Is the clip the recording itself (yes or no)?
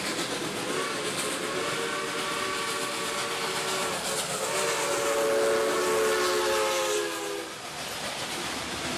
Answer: yes